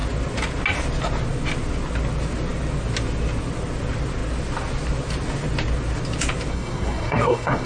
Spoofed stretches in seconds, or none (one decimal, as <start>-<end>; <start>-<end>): 6.5-7.7